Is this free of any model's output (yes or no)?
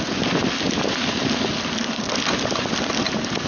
yes